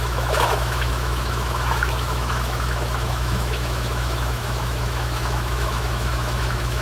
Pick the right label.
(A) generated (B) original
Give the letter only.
A